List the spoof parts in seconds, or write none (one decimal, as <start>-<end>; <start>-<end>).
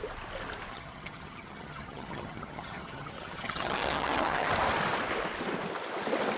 0.7-4.5